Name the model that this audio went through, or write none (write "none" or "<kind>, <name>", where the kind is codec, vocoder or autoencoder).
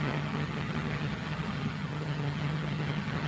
vocoder, HiFi-GAN